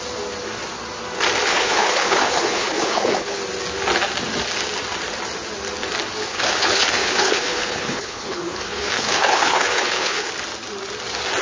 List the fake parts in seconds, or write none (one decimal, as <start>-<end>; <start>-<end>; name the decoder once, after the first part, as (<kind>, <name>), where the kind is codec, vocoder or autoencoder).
1.5-3.4 (codec, HILCodec); 6.3-10.3